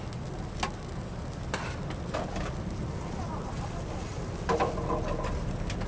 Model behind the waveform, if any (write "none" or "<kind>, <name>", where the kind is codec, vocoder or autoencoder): none